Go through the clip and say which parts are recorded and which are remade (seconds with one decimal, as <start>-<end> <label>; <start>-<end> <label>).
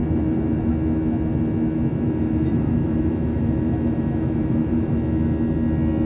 0.0-0.7 remade; 0.7-1.9 recorded; 1.9-5.0 remade; 5.0-6.1 recorded